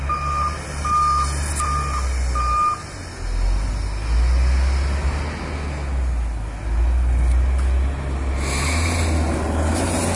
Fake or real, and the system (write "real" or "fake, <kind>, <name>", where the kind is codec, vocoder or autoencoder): real